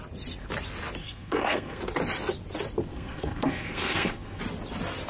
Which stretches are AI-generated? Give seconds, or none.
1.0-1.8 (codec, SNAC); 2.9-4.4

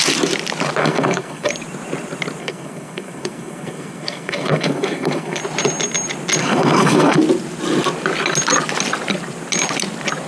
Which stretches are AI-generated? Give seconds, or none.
0.8-1.5 (codec, SNAC); 2.4-5.4; 6.4-7.2

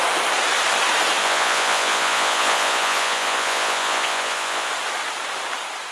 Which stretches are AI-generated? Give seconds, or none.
1.2-4.7 (vocoder, Vocos)

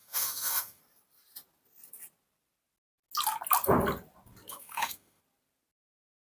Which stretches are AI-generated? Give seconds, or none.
0.0-0.8 (autoencoder, DAC-VAE); 4.5-5.2

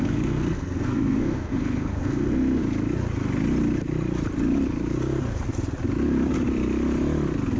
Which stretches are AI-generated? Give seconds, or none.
0.0-2.6 (codec, SNAC)

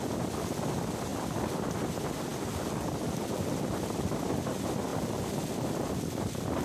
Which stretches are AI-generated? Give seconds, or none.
none

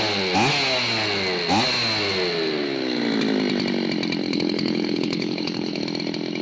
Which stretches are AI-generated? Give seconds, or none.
4.2-5.8 (codec, HILCodec)

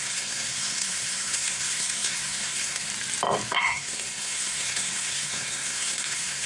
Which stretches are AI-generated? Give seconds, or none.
0.0-2.9 (codec, SNAC); 3.5-6.5